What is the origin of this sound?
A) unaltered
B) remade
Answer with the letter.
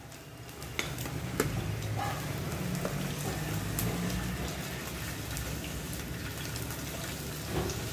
A